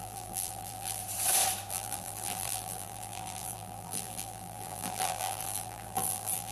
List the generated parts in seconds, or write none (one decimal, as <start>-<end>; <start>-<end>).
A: 0.0-1.0; 1.7-6.5